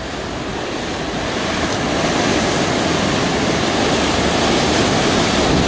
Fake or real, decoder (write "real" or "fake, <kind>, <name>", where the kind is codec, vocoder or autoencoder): real